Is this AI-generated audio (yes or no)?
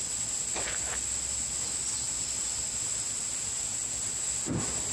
no